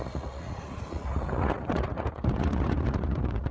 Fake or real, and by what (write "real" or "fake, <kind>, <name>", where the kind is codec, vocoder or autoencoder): fake, vocoder, Vocos